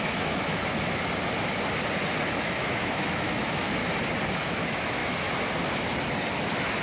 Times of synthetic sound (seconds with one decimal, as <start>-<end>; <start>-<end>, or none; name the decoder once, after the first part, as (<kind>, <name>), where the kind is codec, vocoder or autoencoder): 0.0-0.6 (autoencoder, DAC-VAE); 2.3-3.8; 4.3-5.0